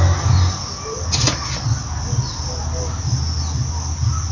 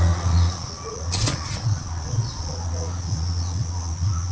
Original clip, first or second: first